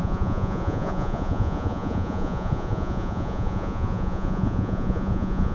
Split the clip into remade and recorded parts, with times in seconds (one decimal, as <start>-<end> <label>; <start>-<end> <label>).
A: 0.0-5.5 remade